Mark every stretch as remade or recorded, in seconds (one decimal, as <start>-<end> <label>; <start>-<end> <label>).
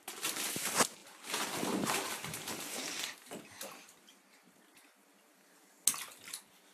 0.0-6.7 recorded